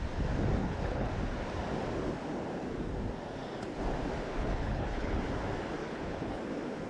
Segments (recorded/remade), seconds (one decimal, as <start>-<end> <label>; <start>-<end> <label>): 0.0-0.6 recorded; 0.6-1.1 remade; 1.1-4.4 recorded; 4.4-5.2 remade; 5.2-5.8 recorded; 5.8-6.4 remade; 6.4-6.9 recorded